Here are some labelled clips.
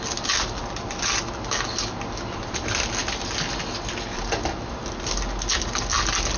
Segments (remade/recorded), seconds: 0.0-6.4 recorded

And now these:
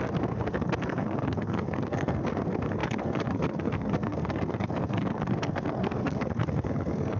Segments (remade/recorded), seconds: 0.0-7.2 remade